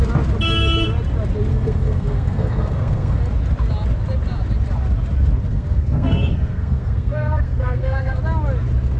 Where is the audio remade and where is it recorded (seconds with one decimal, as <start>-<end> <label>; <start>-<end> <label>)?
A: 0.0-1.5 recorded; 1.5-3.2 remade; 3.2-5.5 recorded; 5.5-8.2 remade; 8.2-9.0 recorded

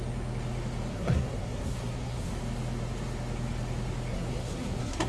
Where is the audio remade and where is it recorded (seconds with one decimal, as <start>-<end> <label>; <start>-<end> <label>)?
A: 0.0-0.9 recorded; 0.9-2.3 remade; 2.3-4.1 recorded; 4.1-5.1 remade

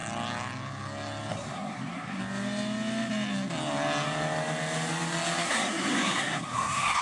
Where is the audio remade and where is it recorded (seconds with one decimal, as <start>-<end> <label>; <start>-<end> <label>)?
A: 0.0-1.3 recorded; 1.3-2.2 remade; 2.2-5.4 recorded; 5.4-7.0 remade

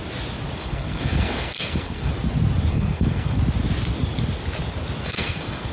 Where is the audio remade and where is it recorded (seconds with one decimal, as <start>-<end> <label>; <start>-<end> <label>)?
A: 0.0-0.6 recorded; 0.6-2.1 remade; 2.1-2.7 recorded; 2.7-3.4 remade; 3.4-5.0 recorded; 5.0-5.7 remade

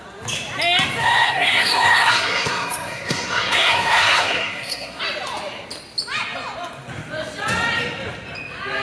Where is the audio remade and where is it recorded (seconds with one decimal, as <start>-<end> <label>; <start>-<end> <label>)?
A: 0.0-1.0 recorded; 1.0-5.0 remade; 5.0-8.8 recorded

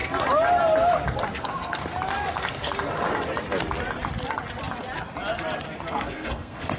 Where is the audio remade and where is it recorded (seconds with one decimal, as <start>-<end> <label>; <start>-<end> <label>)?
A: 0.0-1.4 recorded; 1.4-1.8 remade; 1.8-5.9 recorded; 5.9-6.8 remade

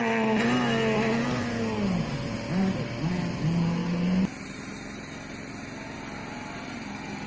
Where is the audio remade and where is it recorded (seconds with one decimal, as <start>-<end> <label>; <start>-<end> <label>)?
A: 0.0-7.3 recorded